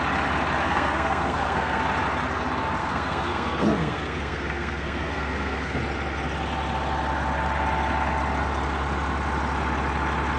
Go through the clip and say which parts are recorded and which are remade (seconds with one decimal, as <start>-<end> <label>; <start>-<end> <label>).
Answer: 0.0-0.6 recorded; 0.6-1.8 remade; 1.8-2.8 recorded; 2.8-5.8 remade; 5.8-10.4 recorded